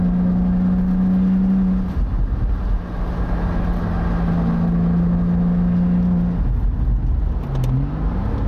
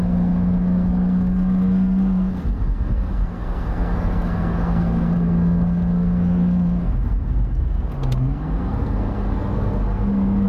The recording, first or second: first